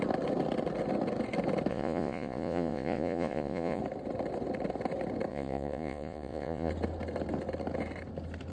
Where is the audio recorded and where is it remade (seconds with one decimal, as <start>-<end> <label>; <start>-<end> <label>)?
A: 0.0-1.7 recorded; 1.7-3.8 remade; 3.8-5.3 recorded; 5.3-6.7 remade; 6.7-8.5 recorded